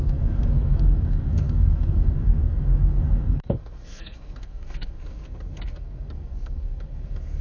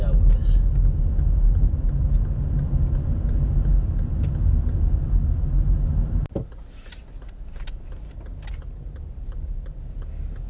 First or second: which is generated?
first